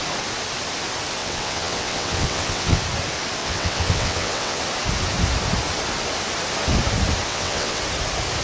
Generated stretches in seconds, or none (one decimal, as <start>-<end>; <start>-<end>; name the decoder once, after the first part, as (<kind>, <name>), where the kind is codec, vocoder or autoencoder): 1.2-2.8 (vocoder, WaveNeXt); 3.4-4.6; 7.3-7.8